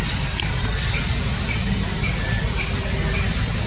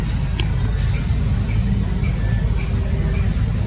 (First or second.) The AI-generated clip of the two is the first